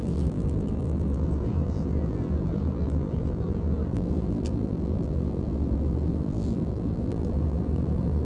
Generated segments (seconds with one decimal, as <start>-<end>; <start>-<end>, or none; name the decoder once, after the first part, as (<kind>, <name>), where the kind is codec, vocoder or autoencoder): 0.0-8.2 (vocoder, BigVGAN v2)